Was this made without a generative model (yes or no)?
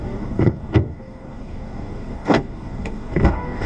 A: no